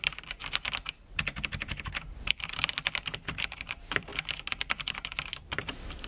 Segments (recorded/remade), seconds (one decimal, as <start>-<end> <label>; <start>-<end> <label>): 0.0-0.4 remade; 0.4-2.1 recorded; 2.1-4.1 remade; 4.1-4.8 recorded; 4.8-6.1 remade